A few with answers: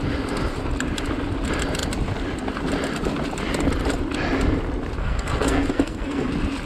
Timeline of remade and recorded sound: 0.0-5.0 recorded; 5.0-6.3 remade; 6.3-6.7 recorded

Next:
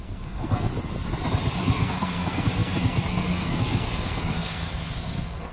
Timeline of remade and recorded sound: 0.0-0.7 remade; 0.7-1.6 recorded; 1.6-5.5 remade